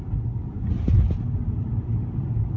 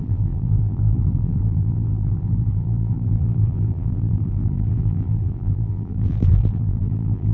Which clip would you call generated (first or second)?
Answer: second